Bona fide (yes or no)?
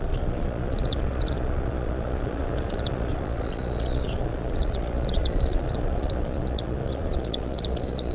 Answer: no